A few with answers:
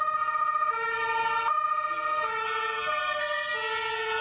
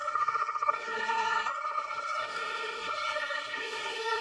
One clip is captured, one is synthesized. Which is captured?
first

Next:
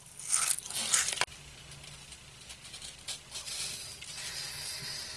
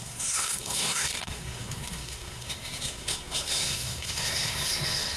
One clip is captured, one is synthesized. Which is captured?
first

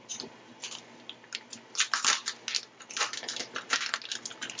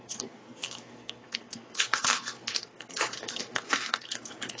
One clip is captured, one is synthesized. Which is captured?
first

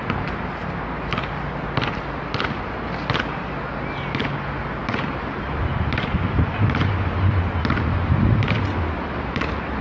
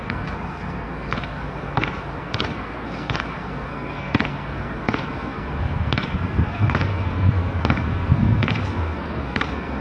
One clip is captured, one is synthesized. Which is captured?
first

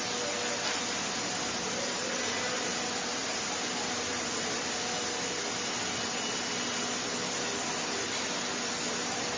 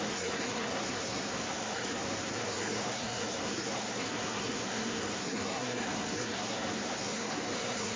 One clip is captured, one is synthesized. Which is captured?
first